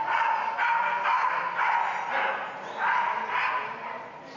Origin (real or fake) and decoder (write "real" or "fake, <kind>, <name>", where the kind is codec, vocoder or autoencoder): real